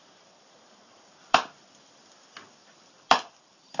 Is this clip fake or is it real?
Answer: fake